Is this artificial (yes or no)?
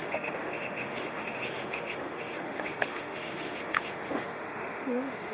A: yes